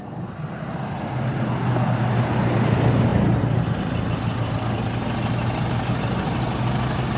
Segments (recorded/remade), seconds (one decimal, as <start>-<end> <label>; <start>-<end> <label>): 0.0-7.2 recorded